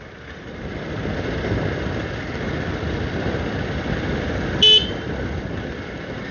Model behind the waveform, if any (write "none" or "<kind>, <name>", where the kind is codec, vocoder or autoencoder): none